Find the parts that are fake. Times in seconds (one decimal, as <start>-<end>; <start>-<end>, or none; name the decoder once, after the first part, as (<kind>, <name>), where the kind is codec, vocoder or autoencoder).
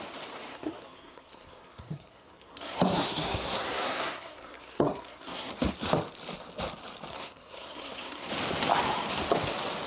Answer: 0.5-5.5 (codec, SNAC); 7.1-8.3